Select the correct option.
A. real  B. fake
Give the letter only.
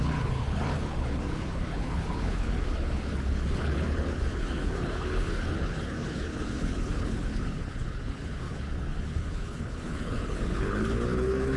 B